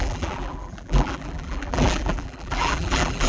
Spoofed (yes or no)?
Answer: yes